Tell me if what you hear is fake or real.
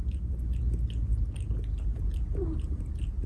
real